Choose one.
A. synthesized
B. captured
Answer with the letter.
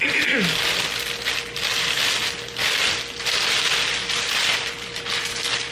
B